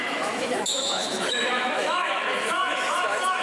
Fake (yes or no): yes